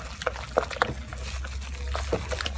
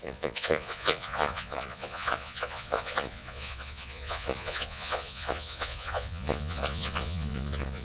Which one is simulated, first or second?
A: second